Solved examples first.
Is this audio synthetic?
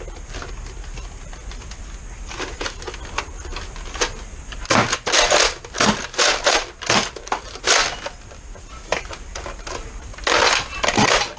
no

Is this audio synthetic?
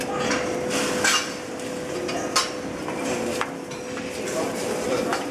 no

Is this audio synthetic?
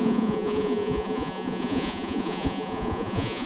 yes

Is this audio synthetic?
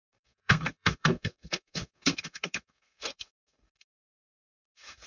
yes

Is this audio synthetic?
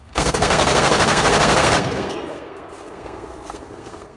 yes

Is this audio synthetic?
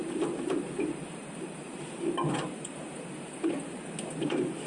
yes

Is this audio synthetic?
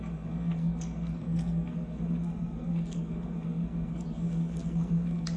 yes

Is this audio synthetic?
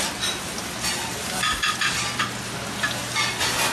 no